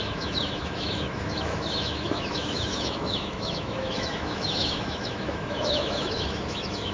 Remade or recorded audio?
remade